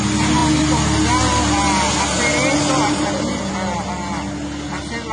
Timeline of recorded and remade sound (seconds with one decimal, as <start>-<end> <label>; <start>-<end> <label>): 0.0-5.1 recorded